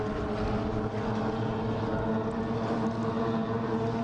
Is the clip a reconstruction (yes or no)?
no